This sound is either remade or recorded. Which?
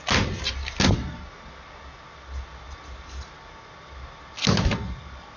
recorded